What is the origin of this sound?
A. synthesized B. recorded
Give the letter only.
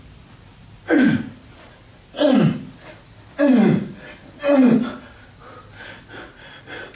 B